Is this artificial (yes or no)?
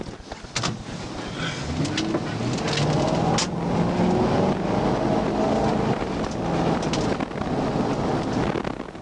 no